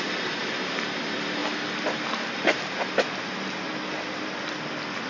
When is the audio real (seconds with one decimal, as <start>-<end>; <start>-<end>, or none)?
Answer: 0.0-5.1